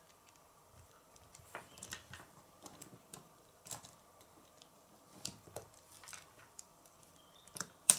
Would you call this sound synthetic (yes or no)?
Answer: yes